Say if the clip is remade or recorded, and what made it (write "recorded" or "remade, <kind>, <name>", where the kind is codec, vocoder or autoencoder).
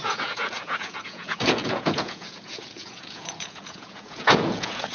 remade, vocoder, Vocos